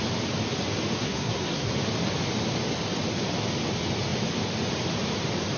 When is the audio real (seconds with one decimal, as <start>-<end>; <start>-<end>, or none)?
0.0-1.0; 1.7-5.6